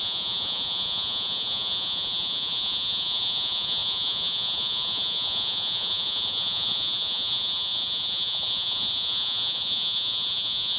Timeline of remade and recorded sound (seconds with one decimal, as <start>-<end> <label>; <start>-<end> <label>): 0.0-10.8 remade